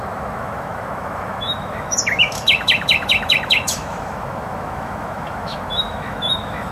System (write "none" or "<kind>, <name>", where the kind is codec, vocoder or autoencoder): autoencoder, DAC-VAE